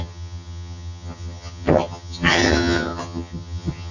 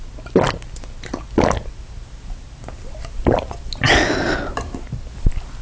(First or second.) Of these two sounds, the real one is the second